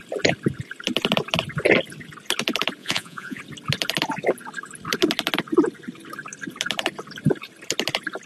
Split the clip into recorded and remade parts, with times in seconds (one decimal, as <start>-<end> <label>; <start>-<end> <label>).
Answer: 0.0-2.8 recorded; 2.8-3.4 remade; 3.4-8.3 recorded